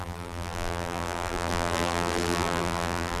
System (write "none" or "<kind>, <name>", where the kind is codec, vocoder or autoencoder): vocoder, BigVGAN v2